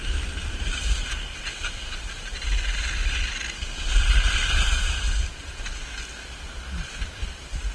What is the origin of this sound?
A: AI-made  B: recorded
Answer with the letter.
B